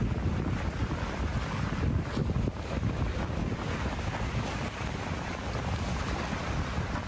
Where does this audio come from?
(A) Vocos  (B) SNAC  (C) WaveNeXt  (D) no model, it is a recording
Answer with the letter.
D